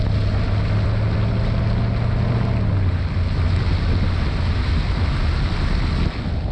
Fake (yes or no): no